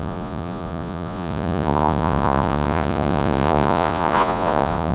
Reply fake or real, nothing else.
fake